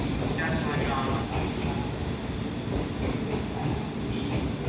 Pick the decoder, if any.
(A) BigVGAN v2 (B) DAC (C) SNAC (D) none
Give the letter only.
D